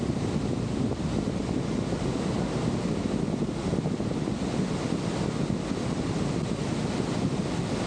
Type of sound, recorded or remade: recorded